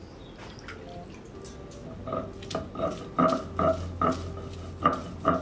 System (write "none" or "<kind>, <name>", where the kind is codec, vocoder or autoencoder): none